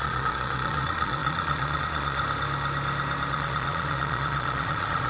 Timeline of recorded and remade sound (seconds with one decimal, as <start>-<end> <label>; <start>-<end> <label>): 0.0-2.2 remade; 2.2-3.3 recorded; 3.3-5.1 remade